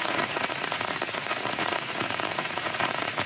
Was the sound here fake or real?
fake